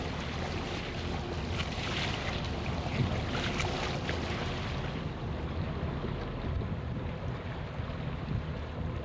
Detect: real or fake real